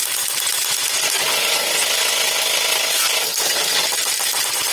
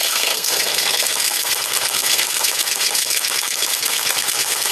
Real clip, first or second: first